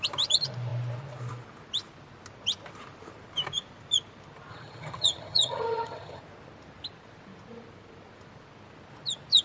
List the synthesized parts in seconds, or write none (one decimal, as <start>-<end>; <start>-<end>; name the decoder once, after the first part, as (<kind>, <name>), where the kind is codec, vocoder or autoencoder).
4.5-6.2 (vocoder, HiFi-GAN)